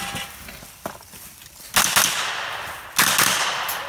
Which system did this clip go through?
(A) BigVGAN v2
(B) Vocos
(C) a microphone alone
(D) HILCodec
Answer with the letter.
C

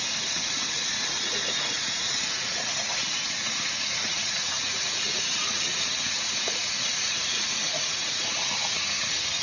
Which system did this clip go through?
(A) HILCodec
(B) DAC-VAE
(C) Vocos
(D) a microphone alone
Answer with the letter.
C